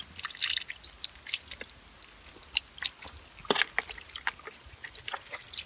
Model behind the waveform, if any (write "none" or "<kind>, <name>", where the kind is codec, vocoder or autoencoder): none